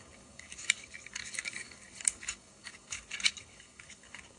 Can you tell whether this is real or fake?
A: fake